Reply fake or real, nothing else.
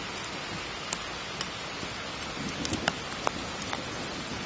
real